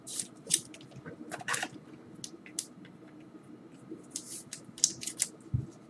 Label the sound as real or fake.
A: real